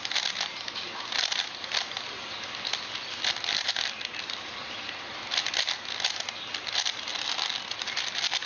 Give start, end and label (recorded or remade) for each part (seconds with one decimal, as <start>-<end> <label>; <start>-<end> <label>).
0.0-8.5 recorded